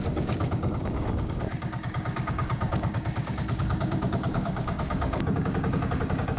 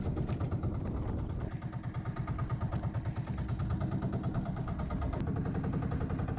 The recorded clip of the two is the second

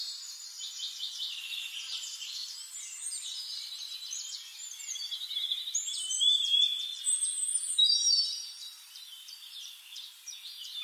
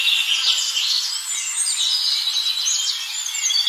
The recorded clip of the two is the second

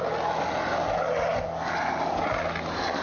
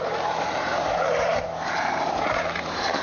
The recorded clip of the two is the first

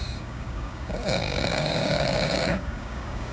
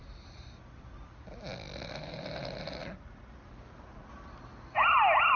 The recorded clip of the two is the second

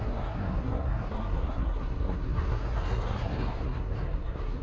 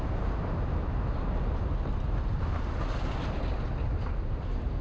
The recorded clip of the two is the second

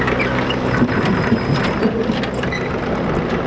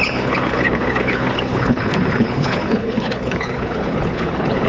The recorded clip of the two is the first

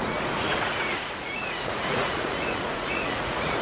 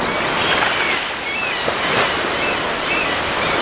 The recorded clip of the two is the second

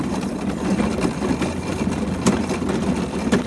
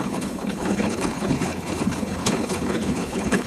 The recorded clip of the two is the first